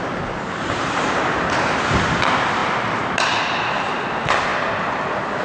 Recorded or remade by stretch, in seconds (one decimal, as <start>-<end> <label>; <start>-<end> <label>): 0.0-5.4 recorded